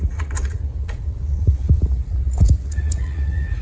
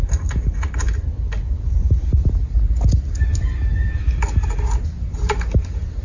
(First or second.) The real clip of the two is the second